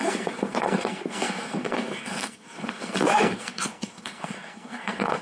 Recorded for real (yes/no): no